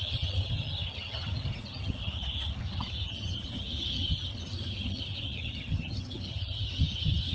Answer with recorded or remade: remade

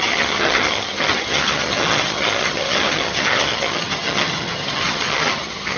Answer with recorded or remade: remade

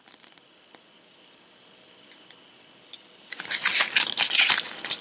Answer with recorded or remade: recorded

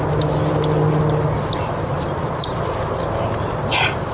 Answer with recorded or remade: recorded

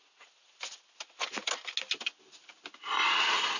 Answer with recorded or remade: recorded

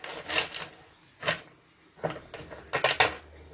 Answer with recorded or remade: recorded